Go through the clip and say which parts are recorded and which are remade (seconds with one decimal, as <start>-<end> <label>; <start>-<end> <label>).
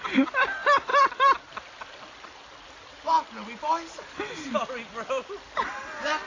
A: 0.0-6.3 recorded